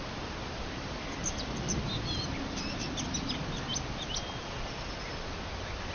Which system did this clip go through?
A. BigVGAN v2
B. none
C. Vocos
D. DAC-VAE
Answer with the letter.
B